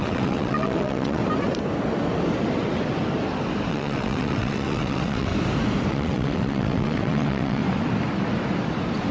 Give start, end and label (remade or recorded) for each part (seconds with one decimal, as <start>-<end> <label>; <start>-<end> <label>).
0.0-1.2 remade; 1.2-3.7 recorded; 3.7-5.3 remade; 5.3-5.9 recorded; 5.9-7.6 remade; 7.6-9.1 recorded